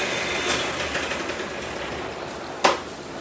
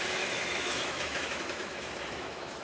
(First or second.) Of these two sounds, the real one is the first